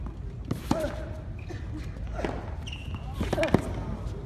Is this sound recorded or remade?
recorded